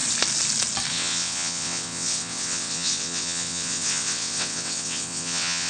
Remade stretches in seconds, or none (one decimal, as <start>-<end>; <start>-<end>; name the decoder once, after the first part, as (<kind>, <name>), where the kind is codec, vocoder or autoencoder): 0.9-5.7 (vocoder, WaveNeXt)